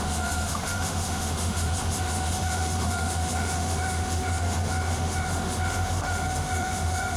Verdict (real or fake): fake